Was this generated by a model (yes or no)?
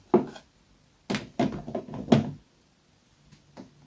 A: no